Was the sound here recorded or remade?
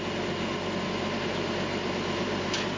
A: recorded